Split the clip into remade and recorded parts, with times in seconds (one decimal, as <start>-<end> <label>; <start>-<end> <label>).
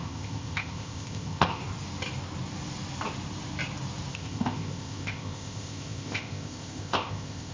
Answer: 0.0-1.6 remade; 1.6-4.1 recorded; 4.1-7.5 remade